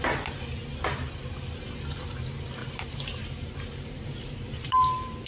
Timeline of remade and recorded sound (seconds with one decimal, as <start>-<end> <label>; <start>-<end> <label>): 0.0-2.6 recorded; 2.6-5.3 remade